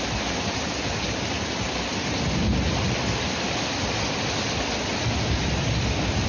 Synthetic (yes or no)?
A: no